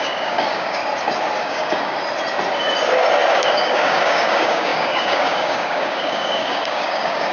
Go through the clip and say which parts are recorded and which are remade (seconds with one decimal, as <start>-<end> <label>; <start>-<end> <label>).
0.0-0.8 remade; 0.8-1.4 recorded; 1.4-2.0 remade; 2.0-3.3 recorded; 3.3-7.3 remade

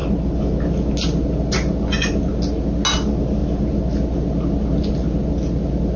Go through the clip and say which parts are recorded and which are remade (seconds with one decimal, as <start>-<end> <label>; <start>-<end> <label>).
0.0-6.0 recorded